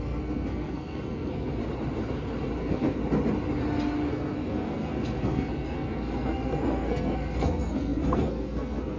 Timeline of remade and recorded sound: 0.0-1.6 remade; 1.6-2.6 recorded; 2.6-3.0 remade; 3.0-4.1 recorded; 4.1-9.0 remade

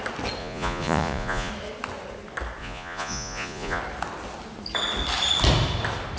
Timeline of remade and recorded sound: 0.0-0.4 recorded; 0.4-1.5 remade; 1.5-2.6 recorded; 2.6-3.8 remade; 3.8-6.2 recorded

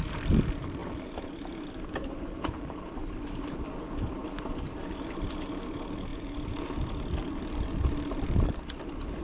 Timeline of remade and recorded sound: 0.0-0.8 recorded; 0.8-3.5 remade; 3.5-4.2 recorded; 4.2-4.9 remade; 4.9-9.2 recorded

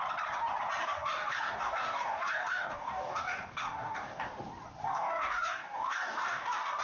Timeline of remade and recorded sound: 0.0-0.8 recorded; 0.8-4.3 remade; 4.3-4.8 recorded; 4.8-6.8 remade

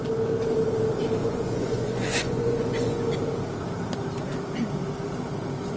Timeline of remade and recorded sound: 0.0-1.2 recorded; 1.2-3.0 remade; 3.0-5.8 recorded

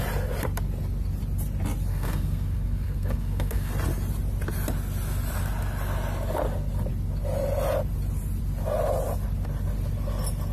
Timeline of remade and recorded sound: 0.0-1.9 recorded; 1.9-3.7 remade; 3.7-10.5 recorded